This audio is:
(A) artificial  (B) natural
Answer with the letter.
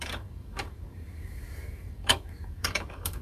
A